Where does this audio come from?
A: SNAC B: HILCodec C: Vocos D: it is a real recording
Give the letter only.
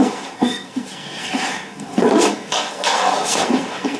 A